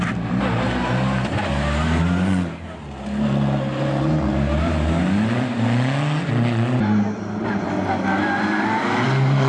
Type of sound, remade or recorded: recorded